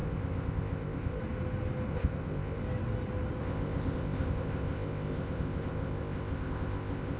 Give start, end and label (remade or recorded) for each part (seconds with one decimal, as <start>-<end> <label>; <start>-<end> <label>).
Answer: 0.0-1.2 remade; 1.2-1.9 recorded; 1.9-2.6 remade; 2.6-3.4 recorded; 3.4-7.2 remade